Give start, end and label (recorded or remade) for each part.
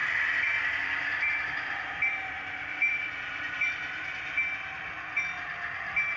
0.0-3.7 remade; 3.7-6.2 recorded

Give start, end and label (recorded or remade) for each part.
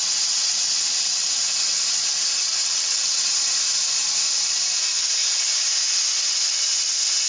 0.0-1.4 remade; 1.4-2.6 recorded; 2.6-3.3 remade; 3.3-7.3 recorded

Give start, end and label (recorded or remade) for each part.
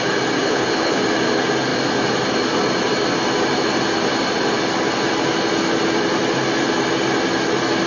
0.0-0.4 recorded; 0.4-1.0 remade; 1.0-7.9 recorded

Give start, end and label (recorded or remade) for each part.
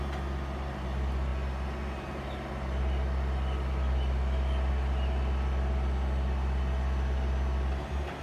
0.0-8.2 recorded